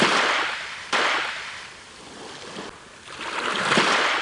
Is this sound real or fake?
real